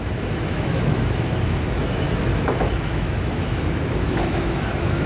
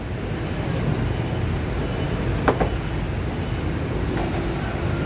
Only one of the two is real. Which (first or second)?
second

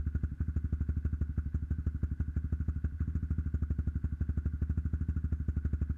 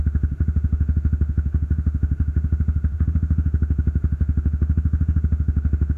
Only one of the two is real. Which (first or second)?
first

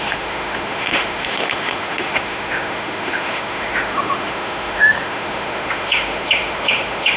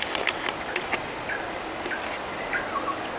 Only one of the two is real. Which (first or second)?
second